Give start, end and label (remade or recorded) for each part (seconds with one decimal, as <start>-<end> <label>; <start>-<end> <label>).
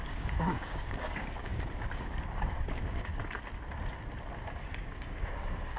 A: 0.0-3.1 remade; 3.1-4.7 recorded; 4.7-5.8 remade